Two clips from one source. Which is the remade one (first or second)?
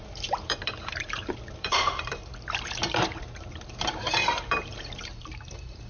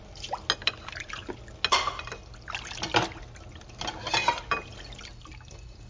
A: first